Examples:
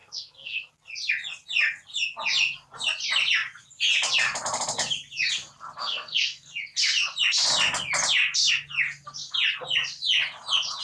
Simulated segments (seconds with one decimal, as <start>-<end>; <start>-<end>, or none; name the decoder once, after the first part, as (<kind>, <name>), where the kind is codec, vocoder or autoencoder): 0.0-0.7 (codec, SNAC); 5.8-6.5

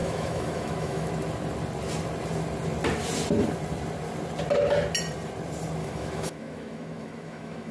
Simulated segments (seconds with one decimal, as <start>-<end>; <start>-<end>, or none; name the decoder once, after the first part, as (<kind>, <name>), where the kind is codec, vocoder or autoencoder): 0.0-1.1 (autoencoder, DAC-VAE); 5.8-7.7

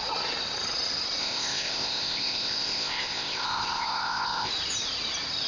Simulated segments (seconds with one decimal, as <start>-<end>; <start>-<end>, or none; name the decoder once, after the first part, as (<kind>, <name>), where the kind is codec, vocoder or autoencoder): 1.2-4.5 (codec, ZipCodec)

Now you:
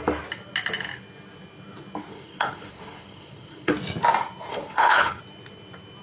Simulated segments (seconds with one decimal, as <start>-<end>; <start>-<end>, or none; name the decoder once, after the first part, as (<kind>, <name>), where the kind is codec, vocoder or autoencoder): 2.1-3.7 (codec, HILCodec); 4.5-5.2